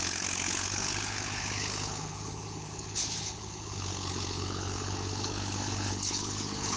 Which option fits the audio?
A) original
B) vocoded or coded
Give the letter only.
B